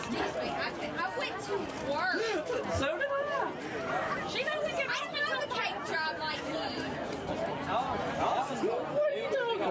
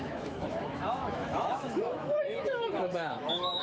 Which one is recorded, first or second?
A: first